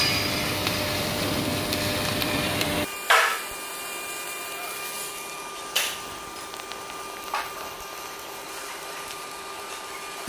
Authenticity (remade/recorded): remade